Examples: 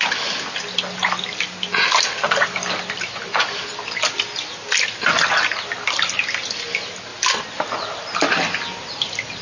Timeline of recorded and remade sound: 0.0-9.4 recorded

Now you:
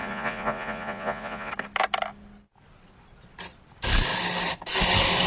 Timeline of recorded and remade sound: 0.0-1.5 remade; 1.5-5.3 recorded

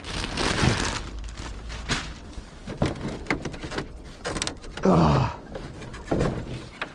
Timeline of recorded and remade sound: 0.0-6.9 recorded

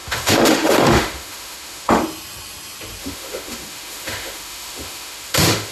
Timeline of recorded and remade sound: 0.0-2.0 remade; 2.0-3.0 recorded; 3.0-5.7 remade

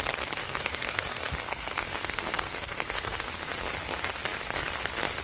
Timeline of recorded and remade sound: 0.0-0.4 recorded; 0.4-3.5 remade; 3.5-5.2 recorded

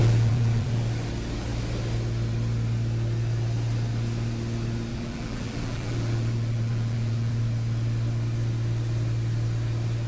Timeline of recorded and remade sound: 0.0-0.8 remade; 0.8-4.9 recorded; 4.9-7.4 remade; 7.4-10.1 recorded

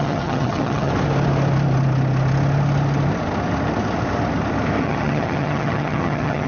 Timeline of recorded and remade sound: 0.0-0.9 remade; 0.9-4.8 recorded; 4.8-6.5 remade

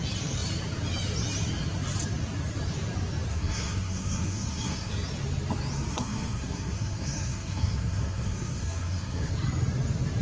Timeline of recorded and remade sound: 0.0-3.3 recorded; 3.3-4.9 remade; 4.9-5.9 recorded; 5.9-9.3 remade; 9.3-10.2 recorded